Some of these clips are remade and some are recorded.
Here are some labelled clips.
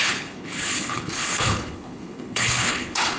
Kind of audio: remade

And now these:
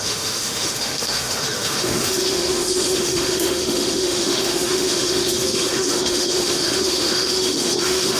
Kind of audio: remade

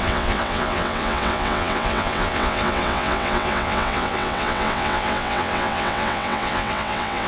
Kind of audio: remade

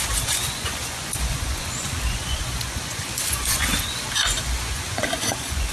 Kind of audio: remade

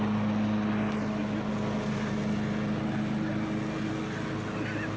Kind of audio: recorded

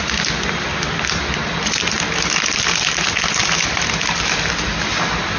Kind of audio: recorded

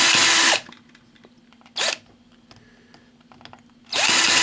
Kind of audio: recorded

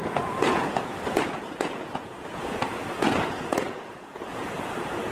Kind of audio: remade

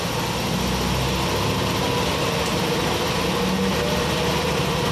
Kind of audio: recorded